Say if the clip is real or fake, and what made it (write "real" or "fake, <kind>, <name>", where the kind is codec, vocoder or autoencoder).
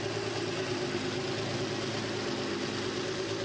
real